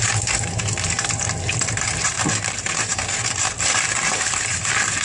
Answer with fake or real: fake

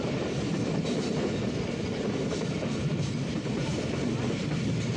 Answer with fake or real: real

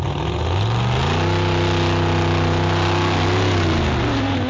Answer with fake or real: real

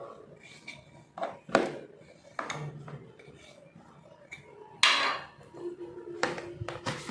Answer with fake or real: real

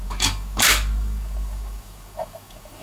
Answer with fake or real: fake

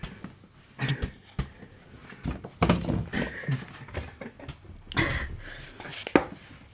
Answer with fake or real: real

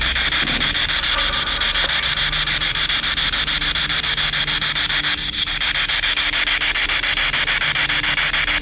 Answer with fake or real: real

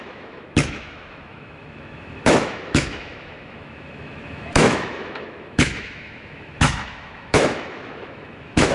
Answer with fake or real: fake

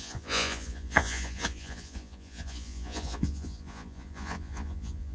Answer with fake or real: fake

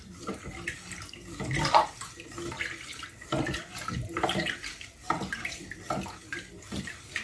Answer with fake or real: real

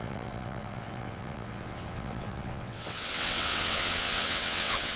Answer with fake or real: fake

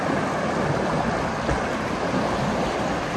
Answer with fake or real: real